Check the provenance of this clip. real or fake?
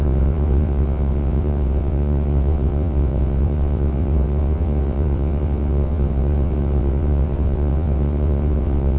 fake